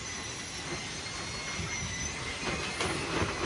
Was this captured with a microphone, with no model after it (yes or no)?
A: yes